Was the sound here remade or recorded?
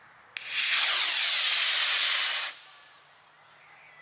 recorded